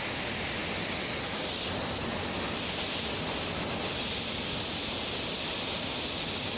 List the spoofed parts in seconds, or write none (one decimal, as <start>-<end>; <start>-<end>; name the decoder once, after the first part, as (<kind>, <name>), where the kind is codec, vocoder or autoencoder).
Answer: none